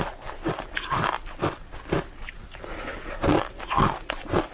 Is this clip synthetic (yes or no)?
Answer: no